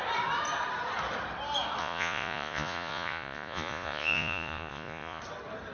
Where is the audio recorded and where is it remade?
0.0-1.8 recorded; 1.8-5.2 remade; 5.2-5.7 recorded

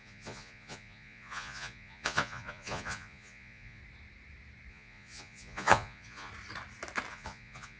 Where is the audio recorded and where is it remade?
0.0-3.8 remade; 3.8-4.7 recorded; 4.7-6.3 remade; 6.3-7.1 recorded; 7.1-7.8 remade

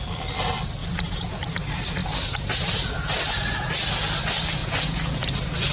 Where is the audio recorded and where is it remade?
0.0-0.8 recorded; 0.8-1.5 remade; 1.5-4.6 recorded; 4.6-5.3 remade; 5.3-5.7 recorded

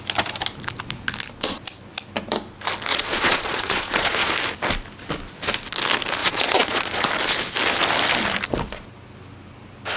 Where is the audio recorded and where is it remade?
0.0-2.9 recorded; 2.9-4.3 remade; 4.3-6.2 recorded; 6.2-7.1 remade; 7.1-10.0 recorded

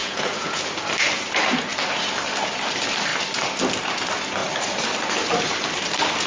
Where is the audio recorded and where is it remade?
0.0-0.6 remade; 0.6-6.3 recorded